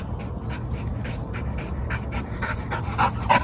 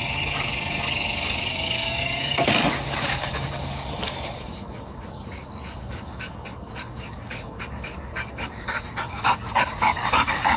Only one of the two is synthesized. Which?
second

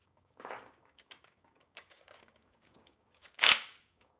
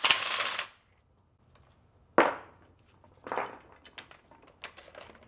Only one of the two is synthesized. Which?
first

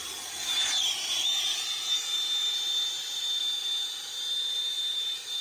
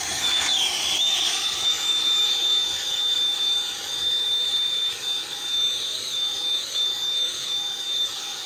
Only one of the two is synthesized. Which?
second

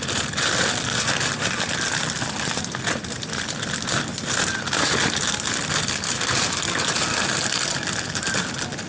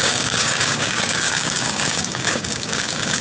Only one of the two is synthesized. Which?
second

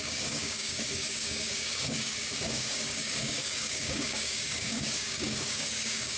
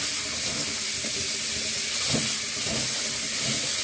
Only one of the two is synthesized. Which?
first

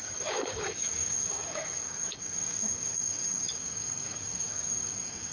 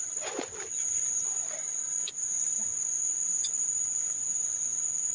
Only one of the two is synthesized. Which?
first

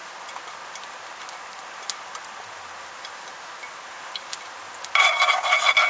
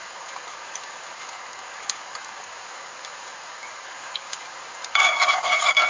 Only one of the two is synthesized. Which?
second